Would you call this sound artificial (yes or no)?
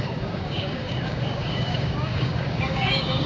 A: yes